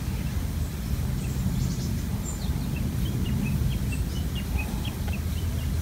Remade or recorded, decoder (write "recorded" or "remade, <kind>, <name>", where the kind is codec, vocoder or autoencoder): recorded